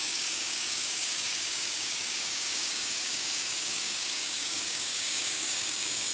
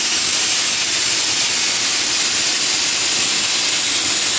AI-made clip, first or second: first